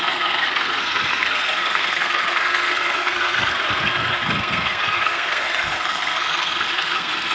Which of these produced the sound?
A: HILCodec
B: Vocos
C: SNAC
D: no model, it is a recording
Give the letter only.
C